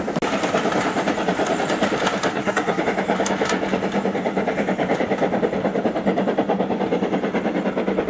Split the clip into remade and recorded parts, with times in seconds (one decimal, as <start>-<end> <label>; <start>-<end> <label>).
0.0-2.3 recorded; 2.3-2.8 remade; 2.8-8.1 recorded